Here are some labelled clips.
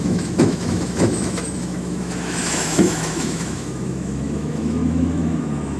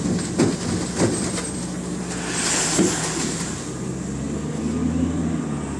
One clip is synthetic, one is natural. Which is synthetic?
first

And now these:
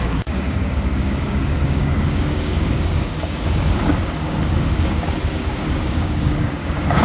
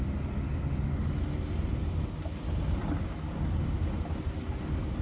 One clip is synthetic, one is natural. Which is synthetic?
first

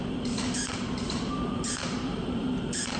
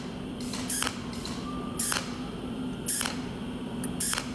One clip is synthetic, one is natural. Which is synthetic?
first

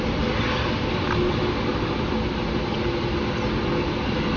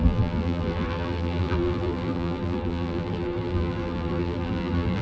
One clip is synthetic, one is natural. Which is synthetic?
second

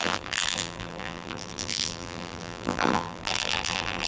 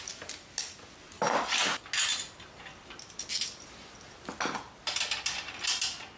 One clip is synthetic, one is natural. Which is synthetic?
first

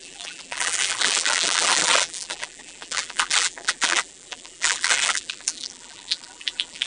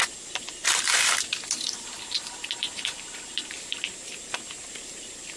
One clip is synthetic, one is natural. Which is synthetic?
first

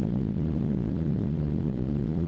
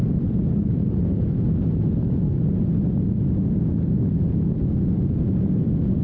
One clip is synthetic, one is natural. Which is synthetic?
first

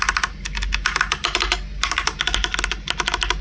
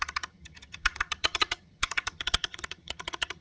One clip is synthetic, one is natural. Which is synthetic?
second